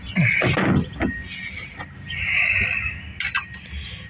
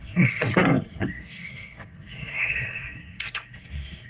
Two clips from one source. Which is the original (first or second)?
first